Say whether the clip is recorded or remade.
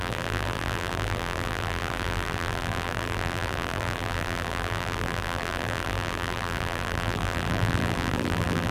remade